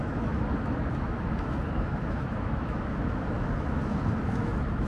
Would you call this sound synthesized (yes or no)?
yes